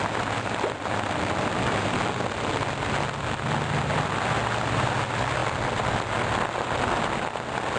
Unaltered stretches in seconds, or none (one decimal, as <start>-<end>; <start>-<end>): 0.0-7.8